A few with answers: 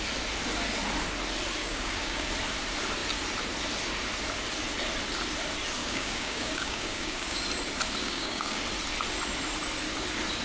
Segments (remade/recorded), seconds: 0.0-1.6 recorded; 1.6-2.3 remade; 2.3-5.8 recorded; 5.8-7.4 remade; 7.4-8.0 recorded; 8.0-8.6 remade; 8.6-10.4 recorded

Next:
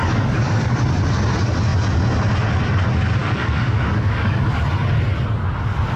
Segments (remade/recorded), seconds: 0.0-0.7 remade; 0.7-3.2 recorded; 3.2-4.6 remade; 4.6-6.0 recorded

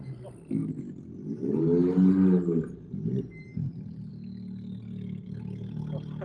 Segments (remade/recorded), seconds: 0.0-3.5 recorded; 3.5-4.1 remade; 4.1-6.2 recorded